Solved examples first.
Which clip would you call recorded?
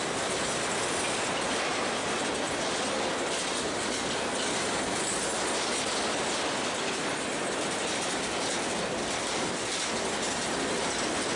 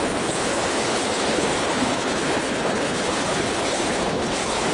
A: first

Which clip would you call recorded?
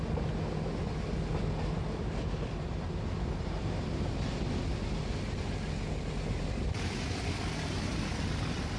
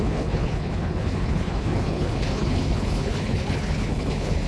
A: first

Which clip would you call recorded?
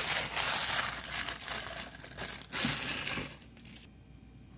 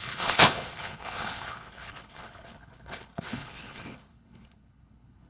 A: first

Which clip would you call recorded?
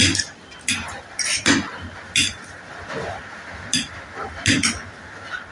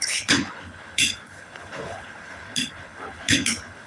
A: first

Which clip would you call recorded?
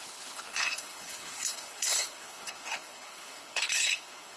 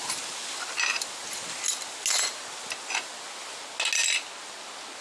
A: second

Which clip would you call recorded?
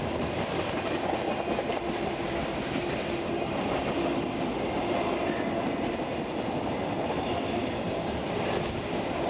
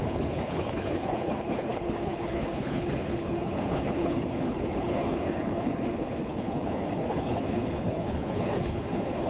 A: first